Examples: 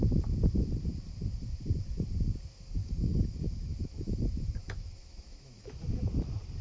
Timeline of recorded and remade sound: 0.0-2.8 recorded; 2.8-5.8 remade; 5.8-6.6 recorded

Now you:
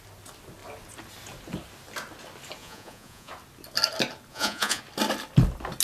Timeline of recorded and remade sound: 0.0-2.6 recorded; 2.6-3.3 remade; 3.3-4.3 recorded; 4.3-4.8 remade; 4.8-5.8 recorded

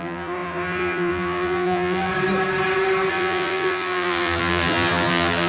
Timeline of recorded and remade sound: 0.0-2.1 remade; 2.1-3.1 recorded; 3.1-5.5 remade